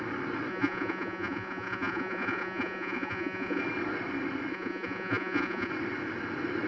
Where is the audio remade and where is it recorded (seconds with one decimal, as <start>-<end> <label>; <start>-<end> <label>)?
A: 0.0-0.5 recorded; 0.5-3.6 remade; 3.6-4.5 recorded; 4.5-5.7 remade; 5.7-6.7 recorded

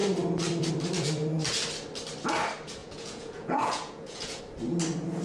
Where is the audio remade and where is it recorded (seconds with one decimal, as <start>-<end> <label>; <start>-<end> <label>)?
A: 0.0-2.8 recorded; 2.8-4.4 remade; 4.4-5.2 recorded

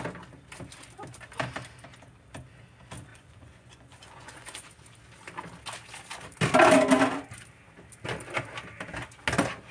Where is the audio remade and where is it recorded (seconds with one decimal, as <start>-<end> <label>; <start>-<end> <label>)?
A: 0.0-3.1 recorded; 3.1-4.7 remade; 4.7-9.7 recorded

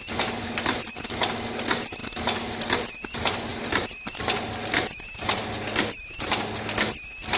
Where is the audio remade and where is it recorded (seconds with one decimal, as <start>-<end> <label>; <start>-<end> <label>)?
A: 0.0-7.4 recorded